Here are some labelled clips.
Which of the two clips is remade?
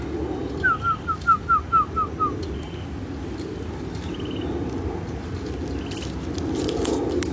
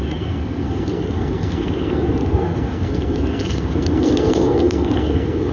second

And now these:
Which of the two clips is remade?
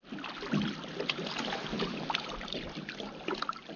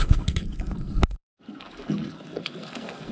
second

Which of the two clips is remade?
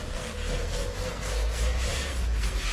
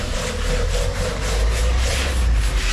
first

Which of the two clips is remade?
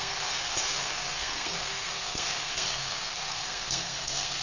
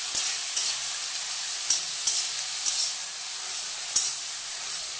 first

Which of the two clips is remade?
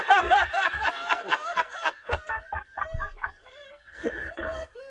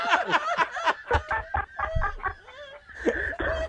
first